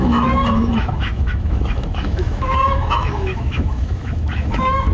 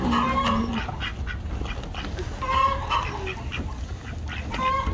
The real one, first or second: second